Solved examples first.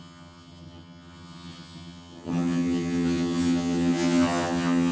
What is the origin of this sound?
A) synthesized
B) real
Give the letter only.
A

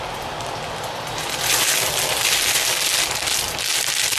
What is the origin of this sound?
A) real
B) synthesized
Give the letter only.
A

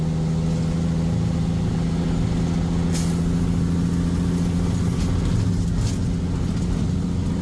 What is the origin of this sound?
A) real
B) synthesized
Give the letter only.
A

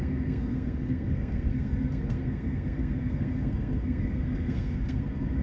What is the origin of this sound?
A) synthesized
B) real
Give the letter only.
A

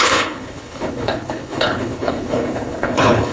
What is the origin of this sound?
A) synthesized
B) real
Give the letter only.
A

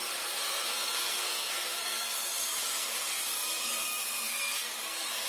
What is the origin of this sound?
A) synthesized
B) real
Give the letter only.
A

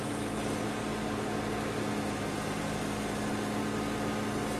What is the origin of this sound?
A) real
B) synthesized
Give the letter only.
A